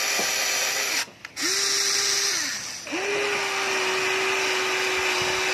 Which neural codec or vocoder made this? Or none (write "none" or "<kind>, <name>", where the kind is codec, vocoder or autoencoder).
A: none